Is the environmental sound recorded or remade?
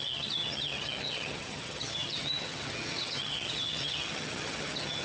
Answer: remade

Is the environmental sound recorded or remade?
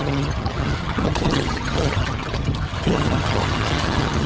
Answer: remade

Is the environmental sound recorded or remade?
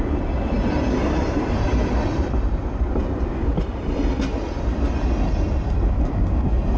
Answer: recorded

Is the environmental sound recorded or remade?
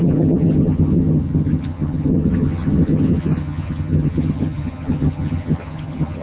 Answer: remade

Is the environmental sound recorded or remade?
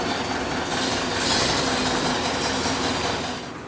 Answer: recorded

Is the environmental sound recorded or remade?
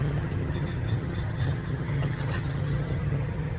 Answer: remade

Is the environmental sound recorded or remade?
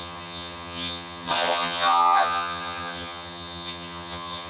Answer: remade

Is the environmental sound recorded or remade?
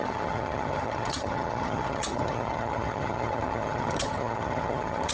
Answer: remade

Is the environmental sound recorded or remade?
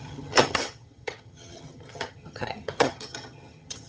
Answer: remade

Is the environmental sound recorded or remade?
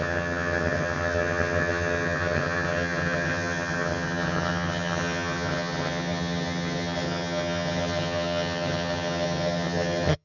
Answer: remade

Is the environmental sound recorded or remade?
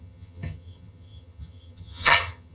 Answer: remade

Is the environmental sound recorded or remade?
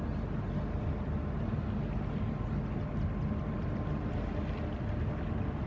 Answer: recorded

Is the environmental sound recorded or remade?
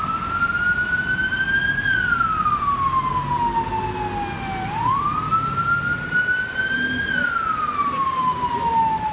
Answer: recorded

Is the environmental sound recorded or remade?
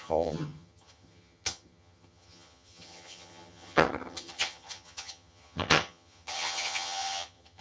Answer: remade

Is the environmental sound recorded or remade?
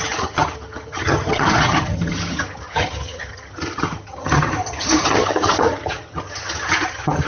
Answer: remade